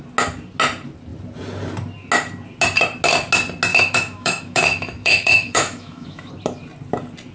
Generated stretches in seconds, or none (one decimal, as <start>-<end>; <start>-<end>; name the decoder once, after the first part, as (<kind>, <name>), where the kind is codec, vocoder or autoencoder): 3.7-6.3 (autoencoder, DAC-VAE)